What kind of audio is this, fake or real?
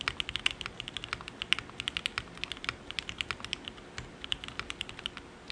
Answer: real